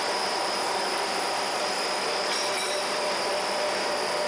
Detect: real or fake fake